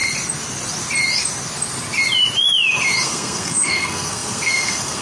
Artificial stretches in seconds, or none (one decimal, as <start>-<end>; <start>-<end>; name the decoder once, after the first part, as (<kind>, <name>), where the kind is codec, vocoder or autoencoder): 3.0-5.0 (codec, SNAC)